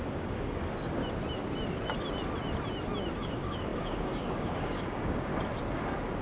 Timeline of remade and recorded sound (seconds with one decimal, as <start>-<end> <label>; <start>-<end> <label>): 0.0-1.0 remade; 1.0-3.2 recorded; 3.2-5.3 remade; 5.3-6.2 recorded